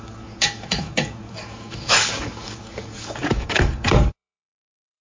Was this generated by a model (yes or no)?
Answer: yes